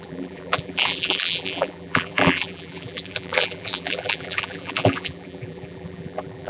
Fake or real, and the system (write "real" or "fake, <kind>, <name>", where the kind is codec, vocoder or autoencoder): fake, vocoder, BigVGAN v2